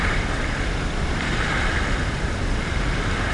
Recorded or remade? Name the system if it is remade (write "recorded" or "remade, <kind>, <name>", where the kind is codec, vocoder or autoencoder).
remade, vocoder, BigVGAN v2